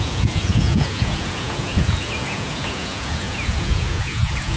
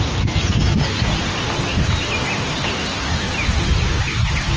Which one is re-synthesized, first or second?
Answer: first